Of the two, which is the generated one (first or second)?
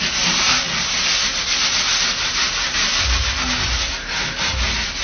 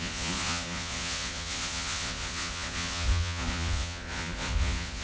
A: second